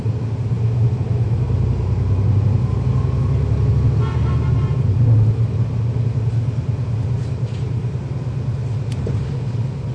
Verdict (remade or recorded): recorded